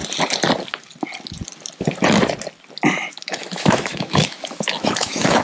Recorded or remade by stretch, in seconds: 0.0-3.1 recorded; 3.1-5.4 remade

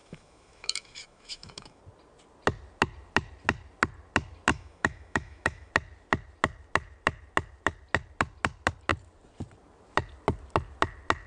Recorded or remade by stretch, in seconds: 0.0-1.8 remade; 1.8-4.5 recorded; 4.5-5.7 remade; 5.7-11.3 recorded

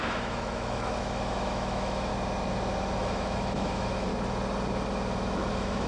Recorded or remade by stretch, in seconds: 0.0-2.1 remade; 2.1-3.0 recorded; 3.0-4.1 remade; 4.1-5.5 recorded; 5.5-5.9 remade

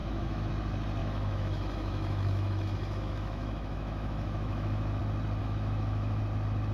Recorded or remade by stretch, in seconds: 0.0-0.5 remade; 0.5-1.0 recorded; 1.0-5.0 remade; 5.0-5.4 recorded; 5.4-6.2 remade; 6.2-6.7 recorded

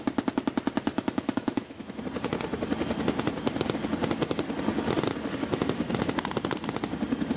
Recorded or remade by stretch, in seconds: 0.0-0.9 recorded; 0.9-2.0 remade; 2.0-7.4 recorded

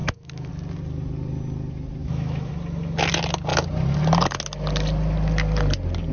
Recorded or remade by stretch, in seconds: 0.0-0.5 remade; 0.5-2.0 recorded; 2.0-2.5 remade; 2.5-6.1 recorded

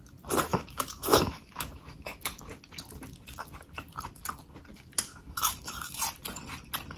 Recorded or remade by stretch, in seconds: 0.0-0.5 recorded; 0.5-2.5 remade; 2.5-4.7 recorded; 4.7-6.0 remade; 6.0-7.0 recorded

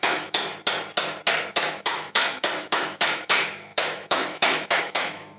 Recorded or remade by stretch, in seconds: 0.0-0.5 remade; 0.5-1.5 recorded; 1.5-5.4 remade